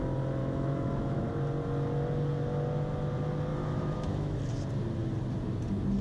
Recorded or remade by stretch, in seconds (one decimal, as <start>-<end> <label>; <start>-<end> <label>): 0.0-0.4 recorded; 0.4-1.3 remade; 1.3-3.5 recorded; 3.5-4.4 remade; 4.4-6.0 recorded